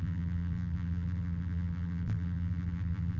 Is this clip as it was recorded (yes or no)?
no